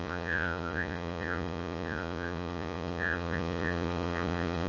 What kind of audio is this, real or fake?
fake